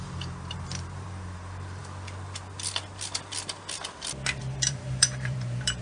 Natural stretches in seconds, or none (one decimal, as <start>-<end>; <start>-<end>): 1.8-4.4